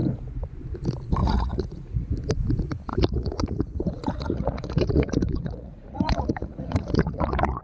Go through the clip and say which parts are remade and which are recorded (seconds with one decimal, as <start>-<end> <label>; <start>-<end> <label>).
0.0-1.2 recorded; 1.2-2.1 remade; 2.1-2.9 recorded; 2.9-7.6 remade